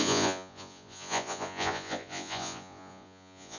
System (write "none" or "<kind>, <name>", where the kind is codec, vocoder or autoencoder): vocoder, Vocos